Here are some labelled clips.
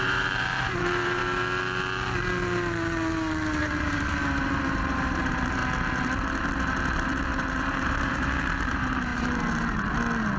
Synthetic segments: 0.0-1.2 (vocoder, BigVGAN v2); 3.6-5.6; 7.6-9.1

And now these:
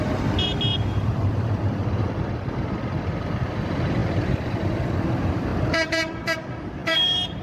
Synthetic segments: 0.7-2.0 (vocoder, BigVGAN v2); 5.5-6.2; 6.8-7.4

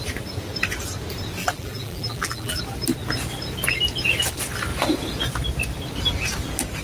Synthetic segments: 1.4-2.6 (vocoder, BigVGAN v2)

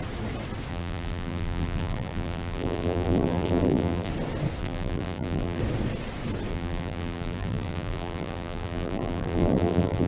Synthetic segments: 0.7-4.1 (vocoder, BigVGAN v2); 4.6-5.6; 6.5-10.1